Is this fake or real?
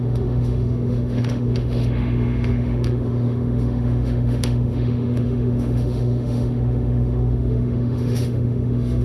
fake